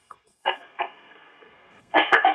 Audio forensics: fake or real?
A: fake